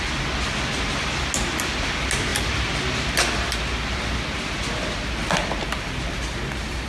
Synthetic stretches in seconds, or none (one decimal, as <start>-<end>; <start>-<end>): none